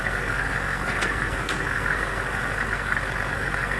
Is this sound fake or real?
fake